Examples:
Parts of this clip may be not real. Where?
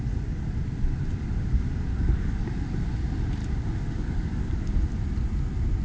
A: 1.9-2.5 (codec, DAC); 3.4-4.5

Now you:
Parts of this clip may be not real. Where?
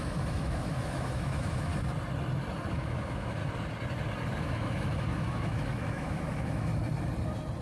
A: 0.0-1.7 (autoencoder, DAC-VAE); 2.7-3.4; 4.4-6.7